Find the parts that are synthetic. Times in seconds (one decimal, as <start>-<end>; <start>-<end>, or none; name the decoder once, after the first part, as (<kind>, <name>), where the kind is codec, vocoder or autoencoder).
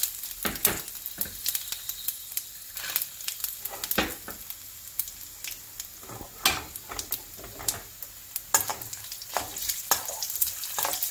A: 8.7-9.3 (vocoder, BigVGAN v2)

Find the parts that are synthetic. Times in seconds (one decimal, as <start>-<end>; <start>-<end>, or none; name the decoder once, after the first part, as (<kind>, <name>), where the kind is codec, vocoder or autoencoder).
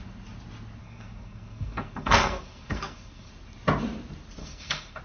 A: 0.8-3.3 (codec, SNAC); 4.4-5.0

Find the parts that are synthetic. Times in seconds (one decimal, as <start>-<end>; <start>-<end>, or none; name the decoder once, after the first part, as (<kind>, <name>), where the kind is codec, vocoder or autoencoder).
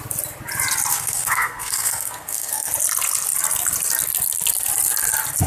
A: 0.9-2.7 (codec, SNAC)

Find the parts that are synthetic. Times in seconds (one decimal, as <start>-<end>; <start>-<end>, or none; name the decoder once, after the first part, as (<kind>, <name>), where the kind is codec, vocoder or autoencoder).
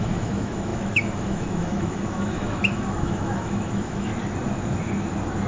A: 0.0-4.1 (autoencoder, DAC-VAE)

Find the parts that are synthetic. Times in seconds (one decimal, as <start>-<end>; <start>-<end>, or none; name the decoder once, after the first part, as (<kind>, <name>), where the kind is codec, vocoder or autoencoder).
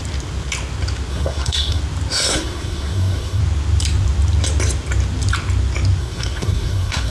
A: 1.1-1.8 (codec, SNAC); 2.3-3.4; 6.0-7.1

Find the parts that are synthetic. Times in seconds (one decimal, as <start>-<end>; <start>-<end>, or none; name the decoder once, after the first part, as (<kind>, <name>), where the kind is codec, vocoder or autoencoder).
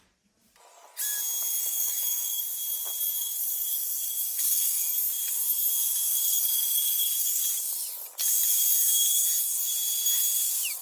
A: 1.6-2.4 (codec, SNAC); 3.2-4.9; 6.1-7.4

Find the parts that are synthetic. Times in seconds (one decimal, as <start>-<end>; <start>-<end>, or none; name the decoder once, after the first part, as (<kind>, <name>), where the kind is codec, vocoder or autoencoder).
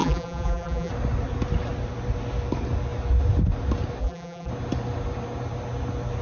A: 0.0-0.9 (vocoder, BigVGAN v2); 4.0-4.5